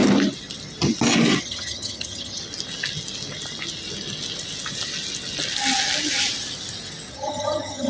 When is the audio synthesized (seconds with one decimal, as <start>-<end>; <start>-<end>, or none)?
1.4-2.4; 7.1-7.9